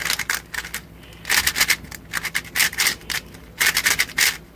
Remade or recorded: recorded